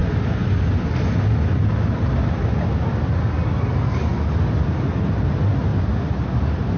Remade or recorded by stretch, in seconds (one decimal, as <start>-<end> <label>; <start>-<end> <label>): 0.0-6.8 recorded